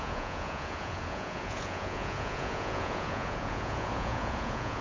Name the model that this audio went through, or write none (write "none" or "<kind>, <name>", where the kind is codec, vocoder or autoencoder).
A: vocoder, Vocos